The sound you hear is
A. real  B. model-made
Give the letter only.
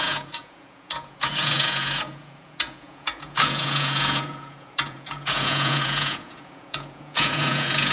B